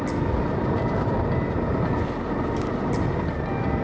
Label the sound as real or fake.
real